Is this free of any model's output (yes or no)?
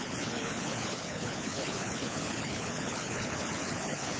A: no